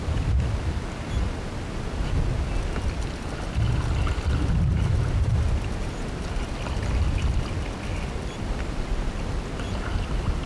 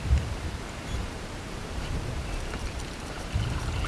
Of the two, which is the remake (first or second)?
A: second